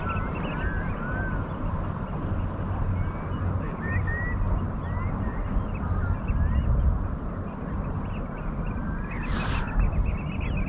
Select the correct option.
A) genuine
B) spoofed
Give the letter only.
A